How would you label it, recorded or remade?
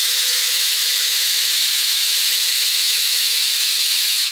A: remade